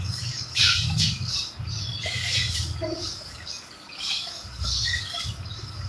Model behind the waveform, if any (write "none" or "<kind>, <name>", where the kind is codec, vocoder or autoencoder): codec, DAC